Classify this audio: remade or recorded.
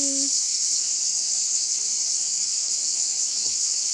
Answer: remade